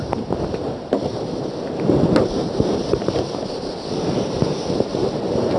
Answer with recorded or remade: remade